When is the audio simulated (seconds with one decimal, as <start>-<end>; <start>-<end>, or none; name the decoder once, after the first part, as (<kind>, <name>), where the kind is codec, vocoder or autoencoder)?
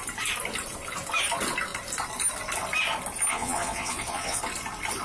3.3-4.4 (vocoder, Vocos)